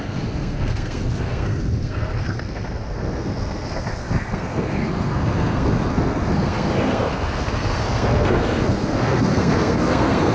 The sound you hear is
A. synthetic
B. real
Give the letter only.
A